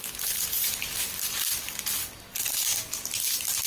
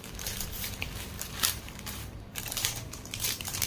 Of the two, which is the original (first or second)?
first